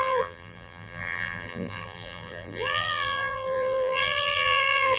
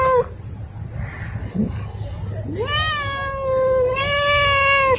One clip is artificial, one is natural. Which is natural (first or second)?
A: second